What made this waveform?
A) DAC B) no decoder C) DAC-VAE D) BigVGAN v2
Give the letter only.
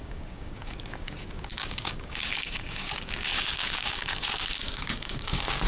A